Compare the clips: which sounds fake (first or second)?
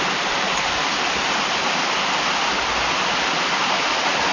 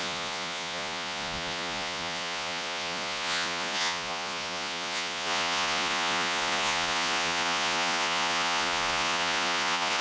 second